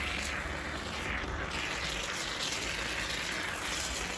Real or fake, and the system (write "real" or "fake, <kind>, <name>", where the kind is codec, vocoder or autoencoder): real